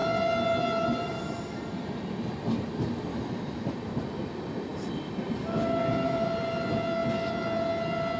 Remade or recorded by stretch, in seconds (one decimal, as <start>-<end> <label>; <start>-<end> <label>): 0.0-3.1 recorded; 3.1-3.7 remade; 3.7-8.2 recorded